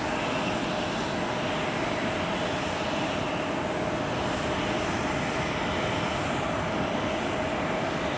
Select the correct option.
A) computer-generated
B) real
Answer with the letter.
B